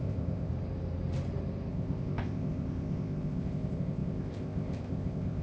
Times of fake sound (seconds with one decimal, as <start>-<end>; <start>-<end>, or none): 0.0-0.5; 1.7-5.4